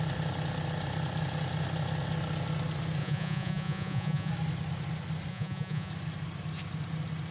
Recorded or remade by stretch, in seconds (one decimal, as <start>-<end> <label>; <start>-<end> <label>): 0.0-3.0 recorded; 3.0-4.3 remade; 4.3-5.3 recorded; 5.3-5.9 remade; 5.9-7.3 recorded